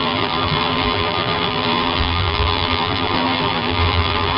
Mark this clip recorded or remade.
remade